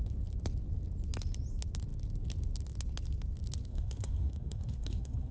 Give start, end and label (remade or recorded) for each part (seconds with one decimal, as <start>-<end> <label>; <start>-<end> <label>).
0.0-3.7 recorded; 3.7-5.3 remade